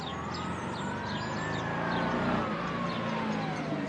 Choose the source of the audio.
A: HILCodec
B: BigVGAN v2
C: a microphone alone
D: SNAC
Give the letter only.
C